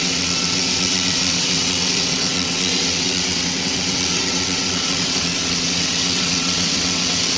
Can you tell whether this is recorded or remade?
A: remade